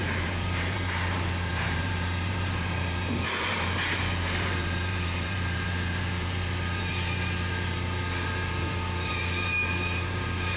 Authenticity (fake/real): fake